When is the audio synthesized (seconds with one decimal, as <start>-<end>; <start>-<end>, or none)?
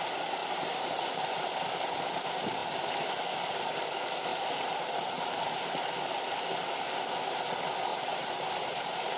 0.4-1.4; 4.3-5.3; 7.9-9.2